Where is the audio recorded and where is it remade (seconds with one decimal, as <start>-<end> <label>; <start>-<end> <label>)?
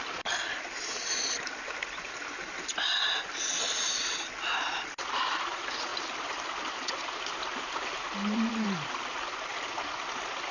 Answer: 0.0-10.5 recorded